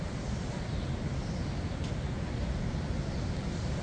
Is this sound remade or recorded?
recorded